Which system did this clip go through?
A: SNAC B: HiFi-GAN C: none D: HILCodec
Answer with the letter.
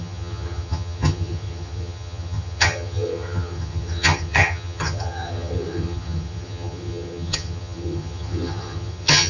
B